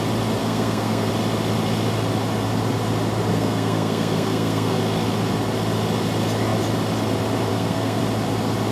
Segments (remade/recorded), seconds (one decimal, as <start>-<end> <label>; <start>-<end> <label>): 0.0-0.4 recorded; 0.4-1.1 remade; 1.1-3.3 recorded; 3.3-4.8 remade; 4.8-7.5 recorded; 7.5-8.0 remade; 8.0-8.7 recorded